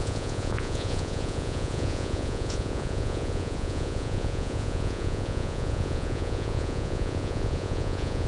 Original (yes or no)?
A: no